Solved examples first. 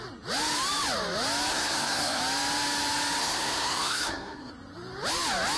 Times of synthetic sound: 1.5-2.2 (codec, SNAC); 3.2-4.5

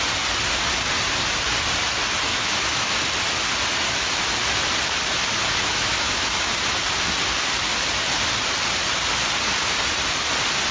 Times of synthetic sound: 2.3-3.0 (autoencoder, DAC-VAE); 5.6-6.5

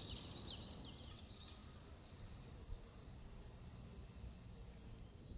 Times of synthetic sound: none

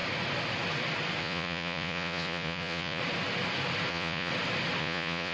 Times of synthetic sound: 1.2-3.0 (vocoder, Vocos); 3.9-4.3; 4.8-5.3

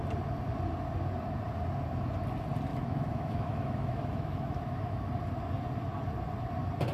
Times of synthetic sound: 2.7-5.1 (autoencoder, DAC-VAE)

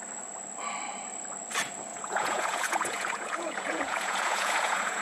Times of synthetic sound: 1.9-5.0 (vocoder, Vocos)

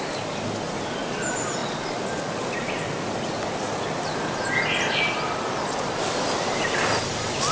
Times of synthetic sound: 1.6-3.2 (vocoder, BigVGAN v2)